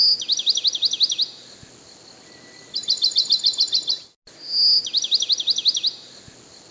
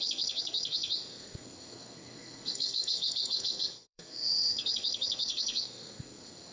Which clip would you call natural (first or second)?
first